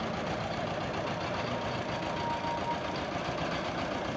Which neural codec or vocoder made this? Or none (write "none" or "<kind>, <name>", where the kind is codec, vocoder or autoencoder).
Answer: none